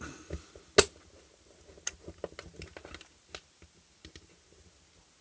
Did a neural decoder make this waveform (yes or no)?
no